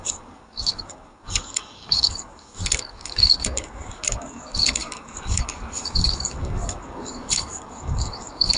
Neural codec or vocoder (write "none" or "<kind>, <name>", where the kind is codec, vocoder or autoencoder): codec, DAC